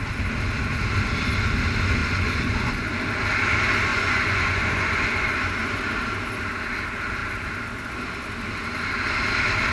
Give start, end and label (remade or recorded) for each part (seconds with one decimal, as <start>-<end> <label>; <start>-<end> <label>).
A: 0.0-2.0 recorded; 2.0-2.7 remade; 2.7-3.9 recorded; 3.9-5.8 remade; 5.8-9.7 recorded